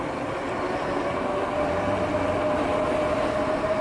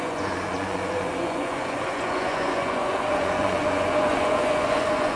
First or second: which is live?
first